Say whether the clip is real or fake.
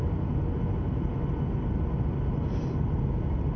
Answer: real